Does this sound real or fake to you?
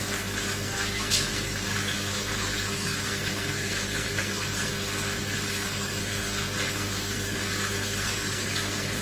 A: fake